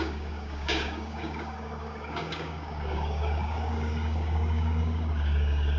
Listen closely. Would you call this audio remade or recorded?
remade